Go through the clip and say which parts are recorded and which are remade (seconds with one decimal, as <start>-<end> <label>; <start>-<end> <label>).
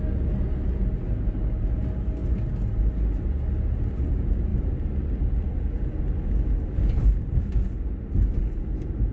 0.0-9.1 recorded